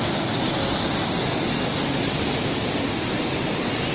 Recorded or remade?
recorded